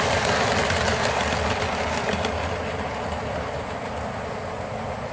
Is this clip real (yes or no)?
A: yes